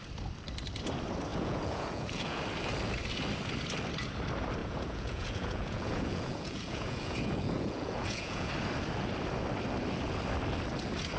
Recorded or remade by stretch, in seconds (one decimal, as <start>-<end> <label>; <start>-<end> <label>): 0.0-1.3 recorded; 1.3-2.4 remade; 2.4-4.6 recorded; 4.6-8.5 remade; 8.5-11.2 recorded